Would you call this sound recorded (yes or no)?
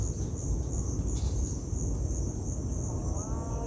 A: yes